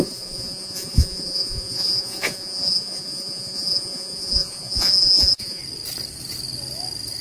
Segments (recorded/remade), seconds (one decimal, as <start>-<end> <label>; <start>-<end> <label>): 0.0-5.6 remade; 5.6-7.2 recorded